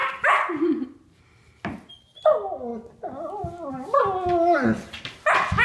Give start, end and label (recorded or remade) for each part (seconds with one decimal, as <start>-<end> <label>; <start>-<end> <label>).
0.0-5.6 recorded